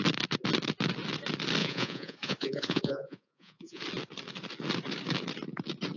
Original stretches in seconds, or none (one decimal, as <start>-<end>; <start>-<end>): 0.0-1.6; 3.8-6.0